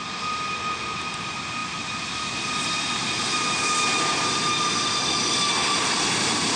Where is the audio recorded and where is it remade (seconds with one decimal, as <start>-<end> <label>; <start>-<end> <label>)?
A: 0.0-6.6 recorded